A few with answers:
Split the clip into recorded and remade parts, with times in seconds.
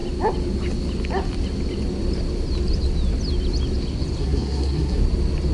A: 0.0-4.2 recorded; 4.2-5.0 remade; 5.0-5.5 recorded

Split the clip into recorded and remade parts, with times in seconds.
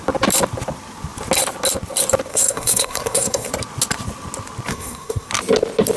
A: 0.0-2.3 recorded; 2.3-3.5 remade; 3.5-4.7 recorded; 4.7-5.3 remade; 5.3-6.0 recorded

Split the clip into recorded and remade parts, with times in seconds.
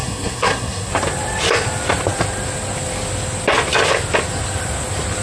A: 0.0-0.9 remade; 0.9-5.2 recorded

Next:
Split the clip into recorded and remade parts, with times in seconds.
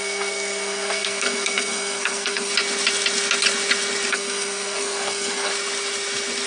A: 0.0-2.5 remade; 2.5-4.1 recorded; 4.1-5.5 remade; 5.5-6.5 recorded